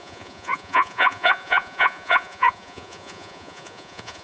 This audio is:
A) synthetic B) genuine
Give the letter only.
A